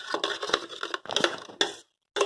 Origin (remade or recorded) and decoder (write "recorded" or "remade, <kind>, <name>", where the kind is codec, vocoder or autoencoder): recorded